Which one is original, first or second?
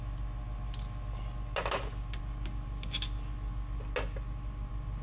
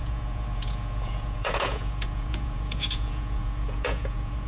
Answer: first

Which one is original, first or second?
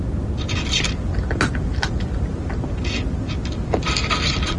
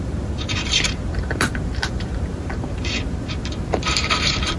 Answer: first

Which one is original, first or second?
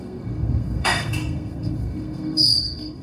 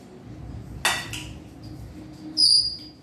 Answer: second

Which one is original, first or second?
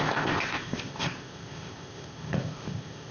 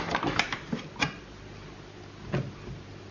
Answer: second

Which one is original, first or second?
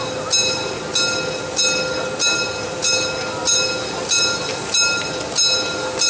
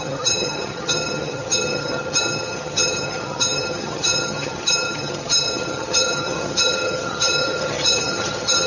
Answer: first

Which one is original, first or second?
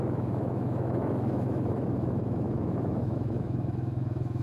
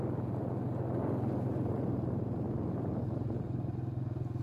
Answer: second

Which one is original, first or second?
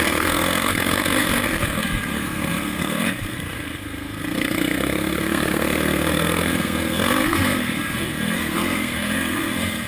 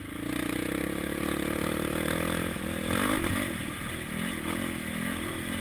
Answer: second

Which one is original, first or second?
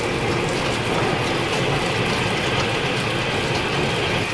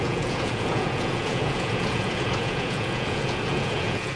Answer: first